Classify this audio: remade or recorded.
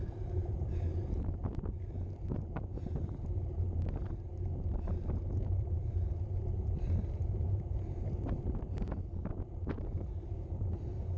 remade